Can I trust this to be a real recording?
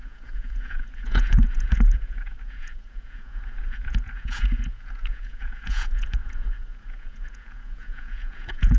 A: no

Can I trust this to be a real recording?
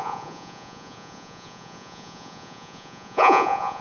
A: no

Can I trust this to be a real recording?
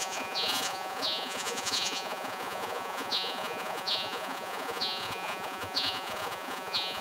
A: no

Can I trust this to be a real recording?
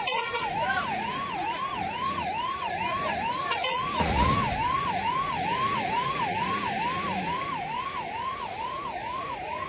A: no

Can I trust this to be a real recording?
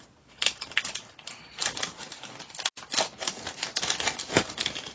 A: yes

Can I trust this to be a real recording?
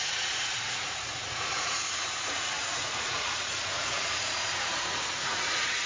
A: no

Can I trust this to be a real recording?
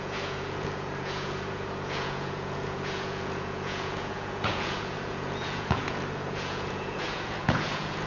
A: no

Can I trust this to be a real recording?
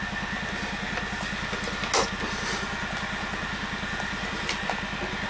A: yes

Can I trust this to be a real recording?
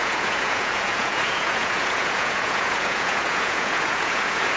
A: no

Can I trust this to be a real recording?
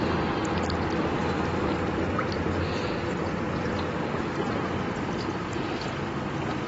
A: yes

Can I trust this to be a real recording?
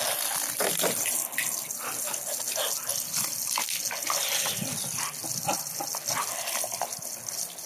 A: yes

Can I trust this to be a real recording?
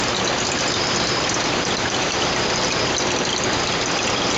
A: yes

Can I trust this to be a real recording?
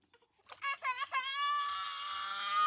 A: yes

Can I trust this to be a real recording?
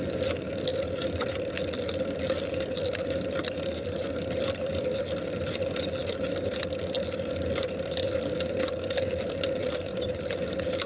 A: yes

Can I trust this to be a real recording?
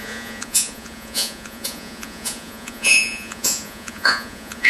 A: no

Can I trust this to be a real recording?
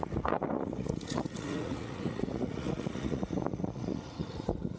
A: no